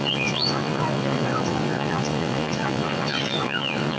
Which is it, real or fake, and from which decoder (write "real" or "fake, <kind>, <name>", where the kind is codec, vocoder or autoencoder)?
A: fake, vocoder, WaveNeXt